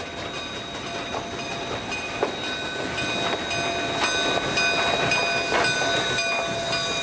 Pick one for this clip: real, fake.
real